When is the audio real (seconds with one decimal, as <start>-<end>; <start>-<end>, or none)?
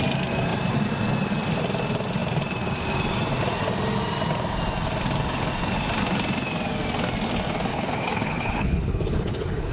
0.0-7.7